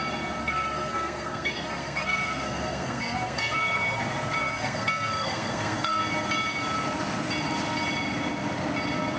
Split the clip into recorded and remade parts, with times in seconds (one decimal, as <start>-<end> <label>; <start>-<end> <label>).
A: 0.0-0.4 recorded; 0.4-4.0 remade; 4.0-4.4 recorded; 4.4-6.0 remade; 6.0-9.2 recorded